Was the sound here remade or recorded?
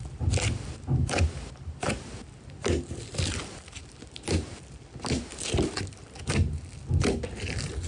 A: recorded